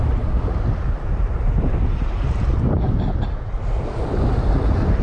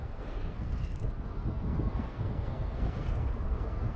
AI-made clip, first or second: second